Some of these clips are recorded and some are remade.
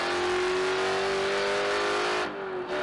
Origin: recorded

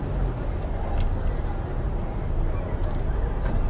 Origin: recorded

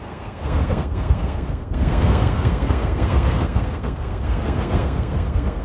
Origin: remade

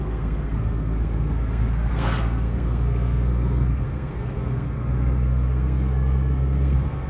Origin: remade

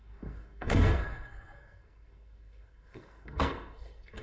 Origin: remade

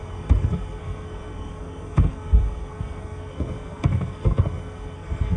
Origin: remade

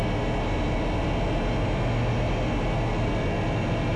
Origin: recorded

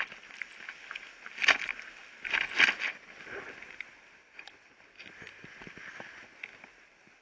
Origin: recorded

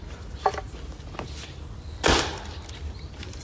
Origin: recorded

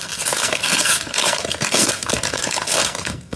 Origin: remade